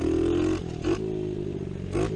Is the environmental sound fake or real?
real